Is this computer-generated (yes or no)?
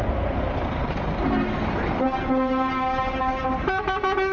yes